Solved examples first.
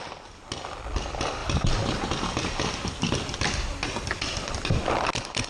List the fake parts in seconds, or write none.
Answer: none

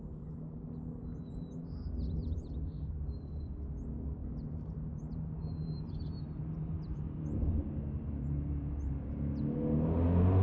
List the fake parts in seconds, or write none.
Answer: 2.2-3.0 (vocoder, BigVGAN v2); 4.2-9.3